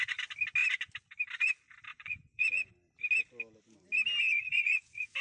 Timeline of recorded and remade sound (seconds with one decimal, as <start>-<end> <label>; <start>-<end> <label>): 0.0-1.9 recorded; 1.9-2.7 remade; 2.7-4.3 recorded; 4.3-5.2 remade